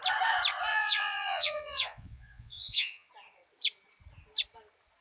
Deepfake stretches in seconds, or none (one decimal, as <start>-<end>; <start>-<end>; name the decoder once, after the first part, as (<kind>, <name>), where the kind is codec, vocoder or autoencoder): 0.7-3.1 (vocoder, Vocos)